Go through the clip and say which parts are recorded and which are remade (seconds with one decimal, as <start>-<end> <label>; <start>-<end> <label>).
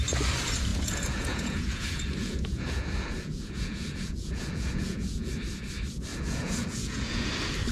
0.0-0.7 recorded; 0.7-5.3 remade; 5.3-6.1 recorded; 6.1-7.3 remade; 7.3-7.7 recorded